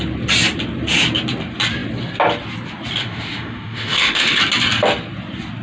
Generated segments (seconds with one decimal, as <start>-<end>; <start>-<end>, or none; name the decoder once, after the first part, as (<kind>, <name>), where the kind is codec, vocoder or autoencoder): 3.0-4.4 (autoencoder, DAC-VAE)